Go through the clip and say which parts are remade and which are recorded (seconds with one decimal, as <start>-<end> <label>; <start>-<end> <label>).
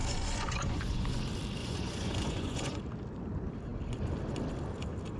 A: 0.0-1.2 remade; 1.2-1.6 recorded; 1.6-2.8 remade; 2.8-5.2 recorded